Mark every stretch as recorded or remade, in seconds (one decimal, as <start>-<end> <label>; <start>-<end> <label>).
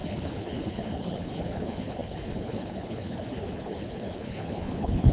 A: 0.0-5.1 remade